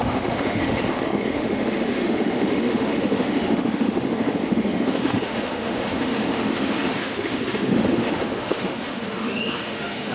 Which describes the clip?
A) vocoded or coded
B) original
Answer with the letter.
A